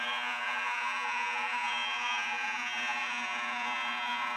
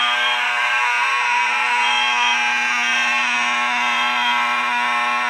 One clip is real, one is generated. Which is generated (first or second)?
first